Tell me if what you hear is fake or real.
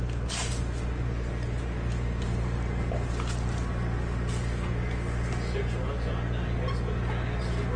real